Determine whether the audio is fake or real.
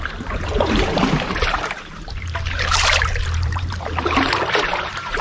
fake